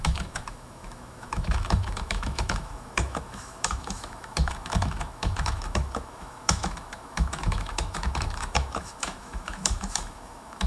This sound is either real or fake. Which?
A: fake